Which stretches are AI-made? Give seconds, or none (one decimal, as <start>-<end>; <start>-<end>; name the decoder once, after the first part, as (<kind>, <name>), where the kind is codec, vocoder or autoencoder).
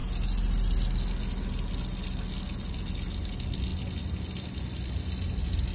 none